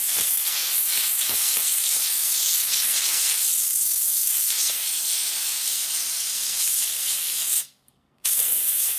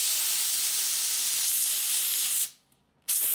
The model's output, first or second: first